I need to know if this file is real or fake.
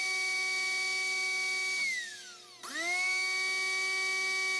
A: real